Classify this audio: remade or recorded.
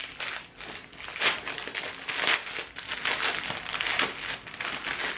recorded